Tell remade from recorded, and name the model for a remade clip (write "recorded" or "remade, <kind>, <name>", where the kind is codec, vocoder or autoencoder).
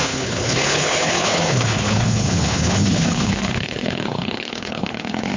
remade, codec, HILCodec